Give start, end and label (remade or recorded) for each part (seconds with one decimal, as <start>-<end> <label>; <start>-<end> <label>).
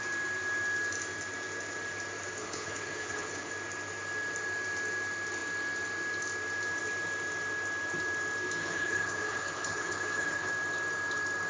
0.0-2.4 recorded; 2.4-3.5 remade; 3.5-8.6 recorded; 8.6-10.5 remade; 10.5-11.5 recorded